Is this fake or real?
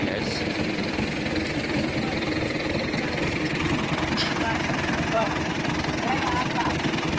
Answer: fake